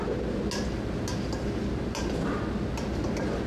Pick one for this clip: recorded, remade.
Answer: recorded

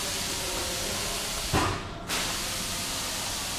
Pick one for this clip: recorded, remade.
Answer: recorded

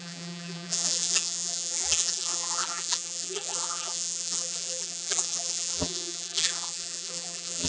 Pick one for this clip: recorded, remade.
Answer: remade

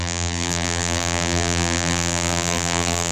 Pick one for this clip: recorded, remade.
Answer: remade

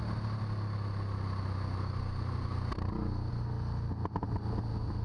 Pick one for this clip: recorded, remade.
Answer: recorded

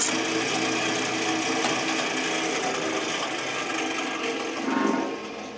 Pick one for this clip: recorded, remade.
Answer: recorded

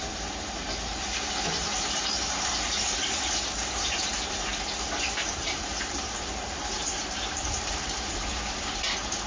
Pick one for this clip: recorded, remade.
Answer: remade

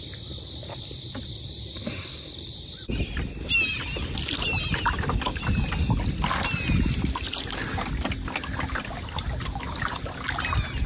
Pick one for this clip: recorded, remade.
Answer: recorded